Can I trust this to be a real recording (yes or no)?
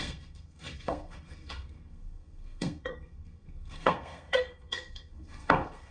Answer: no